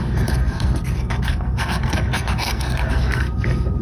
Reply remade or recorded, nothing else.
remade